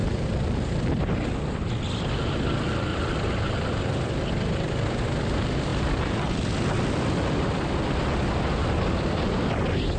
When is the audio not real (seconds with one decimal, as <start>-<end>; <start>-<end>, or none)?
2.9-4.1; 5.7-7.8